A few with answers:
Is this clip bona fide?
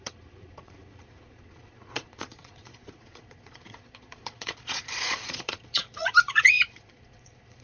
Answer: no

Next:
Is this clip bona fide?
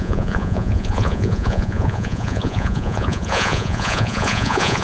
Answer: no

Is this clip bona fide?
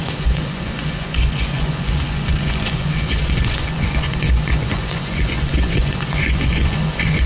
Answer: no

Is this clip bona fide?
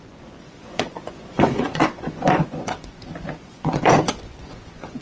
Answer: no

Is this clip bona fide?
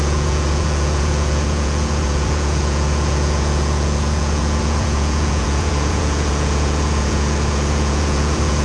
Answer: no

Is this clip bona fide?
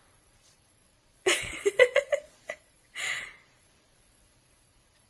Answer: no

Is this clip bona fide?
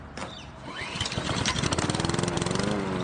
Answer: yes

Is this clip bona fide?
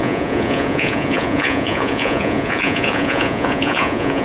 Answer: no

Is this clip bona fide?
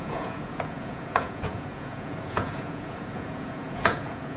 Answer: no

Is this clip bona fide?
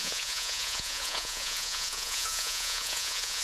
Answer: no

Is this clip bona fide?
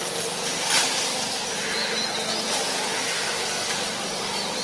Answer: yes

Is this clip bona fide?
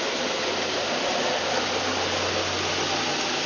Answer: yes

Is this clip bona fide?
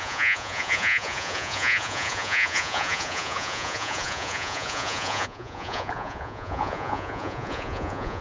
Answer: no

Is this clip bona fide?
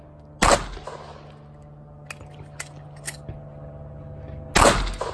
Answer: yes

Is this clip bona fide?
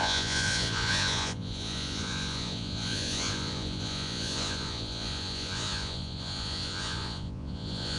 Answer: no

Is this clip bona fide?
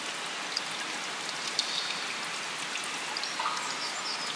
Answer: yes